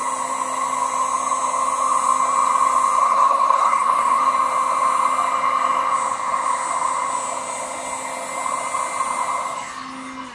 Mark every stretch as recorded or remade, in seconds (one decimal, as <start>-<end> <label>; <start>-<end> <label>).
0.0-3.0 recorded; 3.0-4.2 remade; 4.2-10.3 recorded